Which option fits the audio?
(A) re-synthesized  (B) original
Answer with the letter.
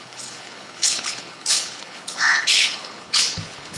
A